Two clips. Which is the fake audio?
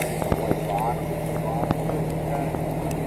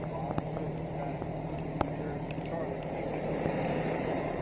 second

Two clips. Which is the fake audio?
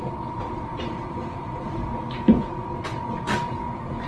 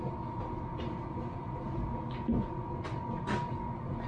first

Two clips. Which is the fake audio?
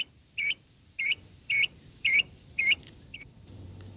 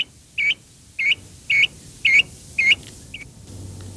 first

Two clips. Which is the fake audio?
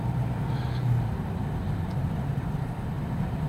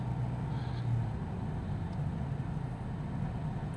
first